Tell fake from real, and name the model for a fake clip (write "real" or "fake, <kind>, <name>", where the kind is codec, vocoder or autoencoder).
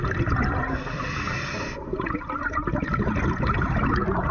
real